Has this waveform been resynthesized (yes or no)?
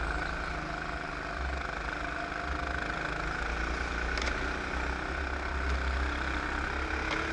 no